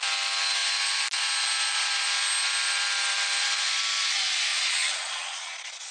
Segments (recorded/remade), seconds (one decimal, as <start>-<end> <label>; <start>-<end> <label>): 0.0-4.5 recorded; 4.5-5.9 remade

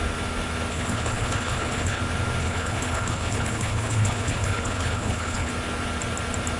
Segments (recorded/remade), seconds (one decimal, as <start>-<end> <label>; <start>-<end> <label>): 0.0-0.7 recorded; 0.7-2.0 remade; 2.0-2.4 recorded; 2.4-5.5 remade; 5.5-6.6 recorded

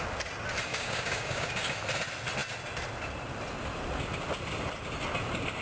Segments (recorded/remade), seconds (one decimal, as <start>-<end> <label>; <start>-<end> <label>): 0.0-0.7 recorded; 0.7-1.5 remade; 1.5-5.6 recorded